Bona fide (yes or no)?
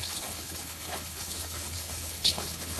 no